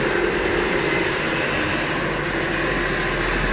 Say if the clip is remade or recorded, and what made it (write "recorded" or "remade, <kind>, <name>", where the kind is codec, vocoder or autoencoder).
recorded